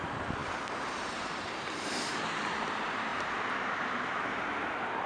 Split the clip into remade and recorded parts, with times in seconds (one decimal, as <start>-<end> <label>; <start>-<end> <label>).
0.0-0.4 recorded; 0.4-2.5 remade; 2.5-3.1 recorded; 3.1-5.1 remade